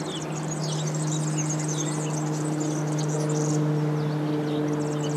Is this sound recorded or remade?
recorded